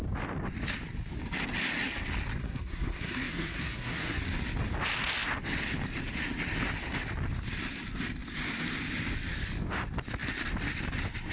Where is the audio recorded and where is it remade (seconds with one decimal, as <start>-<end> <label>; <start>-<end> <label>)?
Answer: 0.0-2.4 recorded; 2.4-4.2 remade; 4.2-11.3 recorded